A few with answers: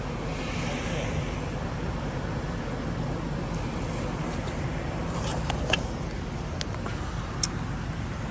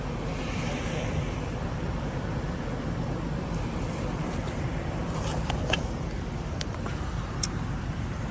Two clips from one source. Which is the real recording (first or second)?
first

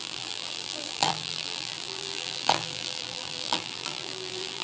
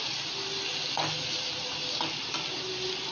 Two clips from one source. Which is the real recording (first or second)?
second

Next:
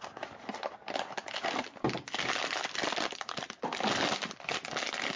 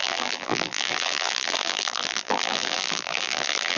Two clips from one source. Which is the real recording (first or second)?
first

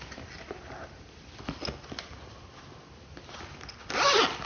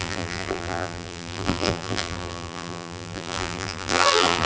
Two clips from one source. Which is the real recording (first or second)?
first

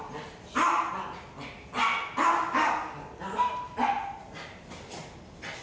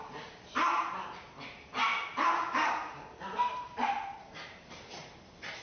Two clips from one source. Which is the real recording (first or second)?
first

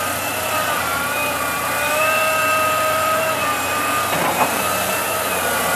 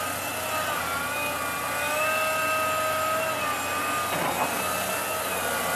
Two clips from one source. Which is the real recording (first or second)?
second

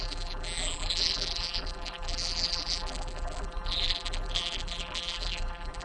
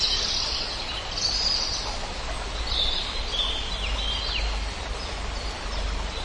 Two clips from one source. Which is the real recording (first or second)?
second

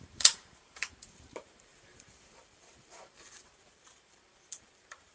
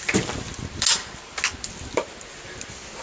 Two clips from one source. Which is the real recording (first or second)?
second